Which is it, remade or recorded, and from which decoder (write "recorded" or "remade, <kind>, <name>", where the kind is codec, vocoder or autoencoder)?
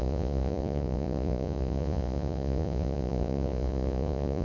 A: remade, vocoder, Vocos